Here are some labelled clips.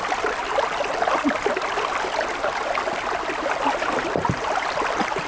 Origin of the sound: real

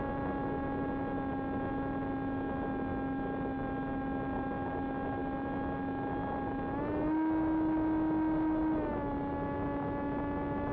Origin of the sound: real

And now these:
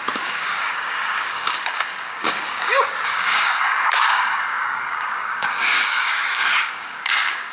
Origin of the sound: fake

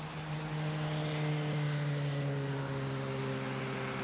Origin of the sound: real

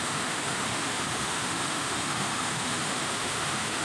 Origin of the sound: fake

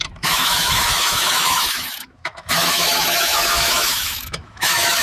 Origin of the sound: fake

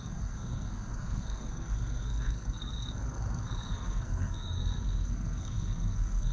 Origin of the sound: fake